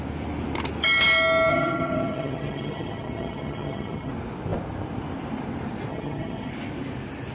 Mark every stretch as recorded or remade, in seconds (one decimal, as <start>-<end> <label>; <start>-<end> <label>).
0.0-1.5 recorded; 1.5-4.1 remade; 4.1-5.9 recorded; 5.9-6.5 remade; 6.5-7.3 recorded